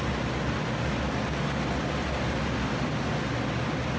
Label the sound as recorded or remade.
recorded